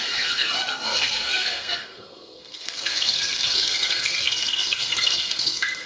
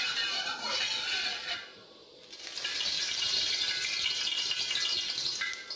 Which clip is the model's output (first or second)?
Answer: first